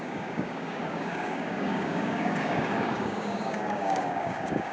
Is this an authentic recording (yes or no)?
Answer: no